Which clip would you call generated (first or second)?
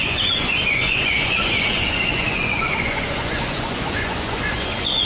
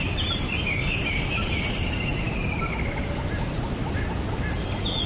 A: first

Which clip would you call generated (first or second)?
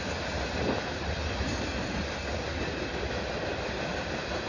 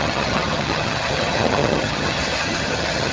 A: second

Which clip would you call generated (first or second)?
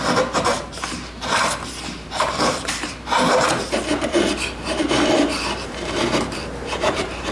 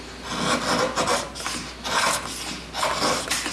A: first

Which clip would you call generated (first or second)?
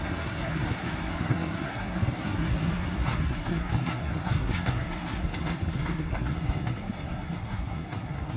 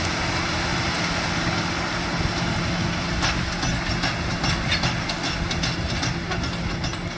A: first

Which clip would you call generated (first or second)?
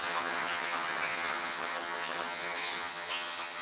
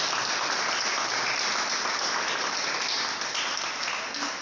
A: first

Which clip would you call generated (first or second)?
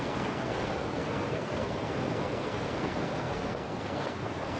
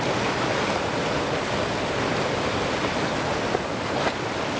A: first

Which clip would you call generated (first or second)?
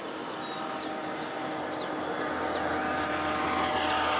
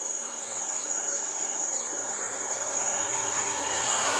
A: second